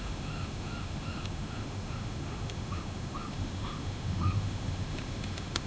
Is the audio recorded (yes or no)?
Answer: no